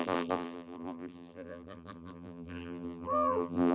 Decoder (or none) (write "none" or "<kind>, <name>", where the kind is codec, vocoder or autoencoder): vocoder, BigVGAN v2